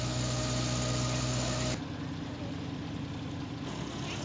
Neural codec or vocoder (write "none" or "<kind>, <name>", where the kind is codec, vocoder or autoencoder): none